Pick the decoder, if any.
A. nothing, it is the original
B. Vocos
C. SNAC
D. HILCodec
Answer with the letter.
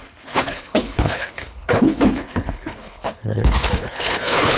D